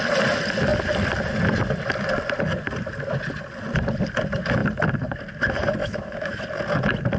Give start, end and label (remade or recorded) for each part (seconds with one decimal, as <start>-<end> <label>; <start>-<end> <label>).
0.0-5.8 recorded; 5.8-6.4 remade; 6.4-7.2 recorded